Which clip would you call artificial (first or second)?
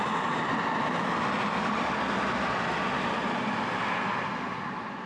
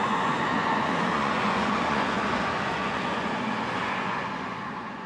second